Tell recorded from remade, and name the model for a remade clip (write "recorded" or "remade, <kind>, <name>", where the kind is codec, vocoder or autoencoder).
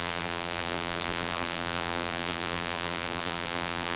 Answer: remade, vocoder, BigVGAN v2